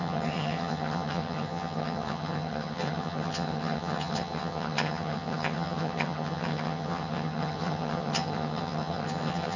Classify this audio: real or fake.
fake